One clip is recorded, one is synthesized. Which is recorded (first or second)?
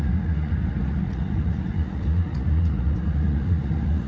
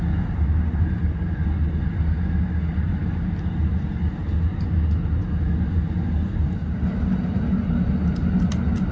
second